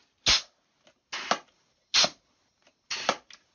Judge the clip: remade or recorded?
recorded